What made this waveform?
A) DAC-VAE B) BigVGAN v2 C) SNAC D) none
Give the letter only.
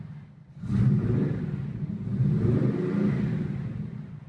D